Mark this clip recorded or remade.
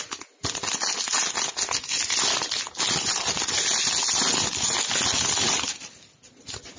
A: recorded